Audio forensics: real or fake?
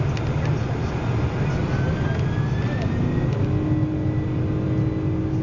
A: real